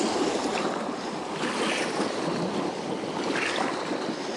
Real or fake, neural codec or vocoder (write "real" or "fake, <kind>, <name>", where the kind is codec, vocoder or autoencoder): real